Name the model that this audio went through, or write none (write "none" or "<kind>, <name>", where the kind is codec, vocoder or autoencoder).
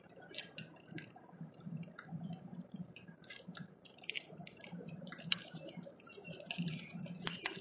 vocoder, BigVGAN v2